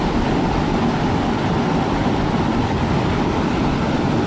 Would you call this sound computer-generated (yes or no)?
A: no